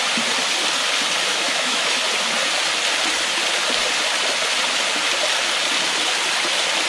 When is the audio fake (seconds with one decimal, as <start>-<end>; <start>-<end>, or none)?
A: 1.3-2.0